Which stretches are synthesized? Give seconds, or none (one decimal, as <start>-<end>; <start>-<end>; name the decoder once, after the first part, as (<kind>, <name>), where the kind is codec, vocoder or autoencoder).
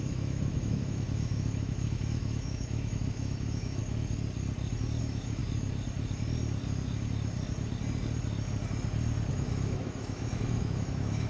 0.0-3.8 (autoencoder, DAC-VAE); 5.0-5.4; 9.3-11.3